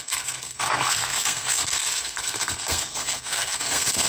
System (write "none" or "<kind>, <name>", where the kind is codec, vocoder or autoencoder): codec, SNAC